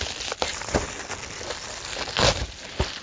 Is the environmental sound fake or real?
real